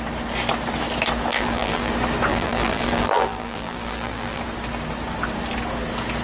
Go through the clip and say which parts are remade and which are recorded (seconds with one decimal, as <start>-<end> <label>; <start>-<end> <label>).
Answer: 0.0-1.3 recorded; 1.3-1.9 remade; 1.9-2.3 recorded; 2.3-4.4 remade; 4.4-6.2 recorded